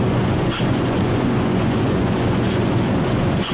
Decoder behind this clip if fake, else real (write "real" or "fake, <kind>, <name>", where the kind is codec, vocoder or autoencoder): fake, vocoder, Vocos